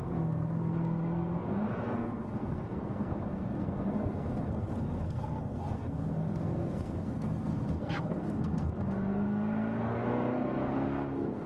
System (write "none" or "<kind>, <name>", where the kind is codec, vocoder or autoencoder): codec, SNAC